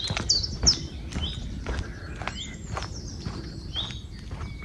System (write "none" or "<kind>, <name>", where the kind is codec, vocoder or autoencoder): none